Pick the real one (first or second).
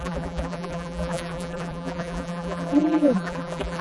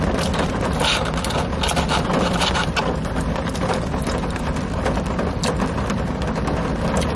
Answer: second